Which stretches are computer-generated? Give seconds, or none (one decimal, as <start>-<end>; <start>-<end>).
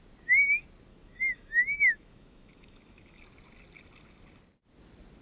0.9-3.2